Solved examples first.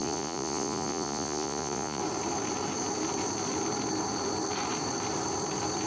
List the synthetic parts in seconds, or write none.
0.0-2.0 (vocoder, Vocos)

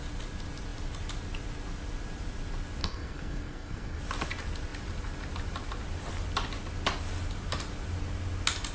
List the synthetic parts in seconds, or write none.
2.8-4.0 (codec, SNAC)

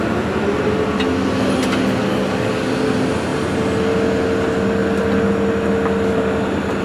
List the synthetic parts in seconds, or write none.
2.0-2.7 (codec, DAC)

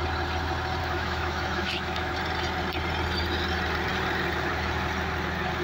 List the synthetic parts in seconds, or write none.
0.8-2.1 (autoencoder, DAC-VAE)

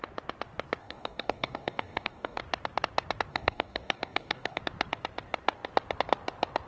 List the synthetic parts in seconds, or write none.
0.8-2.4 (codec, DAC); 3.3-4.6

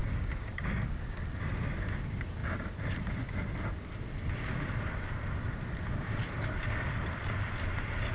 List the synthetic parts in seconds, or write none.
0.0-1.5 (codec, DAC)

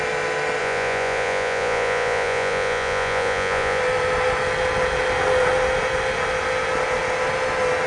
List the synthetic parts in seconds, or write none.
0.6-3.8 (vocoder, Vocos)